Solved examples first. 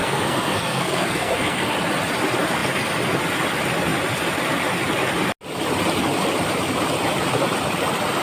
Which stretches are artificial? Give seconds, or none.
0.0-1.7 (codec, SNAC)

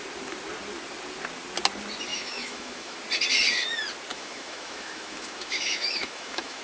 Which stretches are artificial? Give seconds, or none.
2.1-3.0 (autoencoder, DAC-VAE); 4.1-6.6